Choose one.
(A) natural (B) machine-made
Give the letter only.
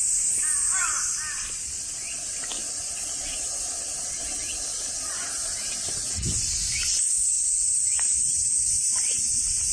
A